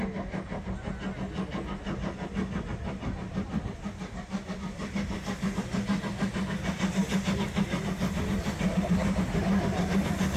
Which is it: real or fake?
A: real